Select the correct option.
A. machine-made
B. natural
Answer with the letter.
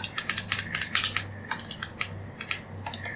B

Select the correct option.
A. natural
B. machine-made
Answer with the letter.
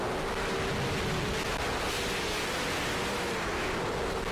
A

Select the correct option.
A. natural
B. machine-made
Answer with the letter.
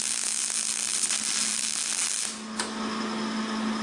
A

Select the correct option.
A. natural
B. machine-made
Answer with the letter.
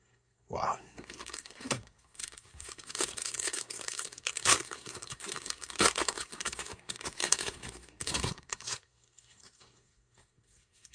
B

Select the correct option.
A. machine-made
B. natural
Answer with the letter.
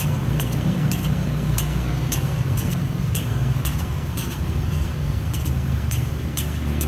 A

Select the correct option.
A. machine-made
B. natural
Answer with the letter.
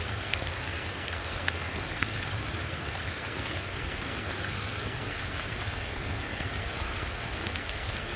A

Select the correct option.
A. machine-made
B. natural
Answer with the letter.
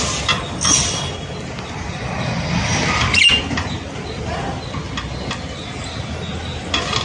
B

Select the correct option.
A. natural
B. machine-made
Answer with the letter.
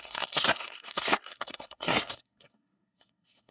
B